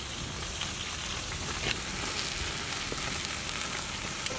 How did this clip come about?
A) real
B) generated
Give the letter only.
A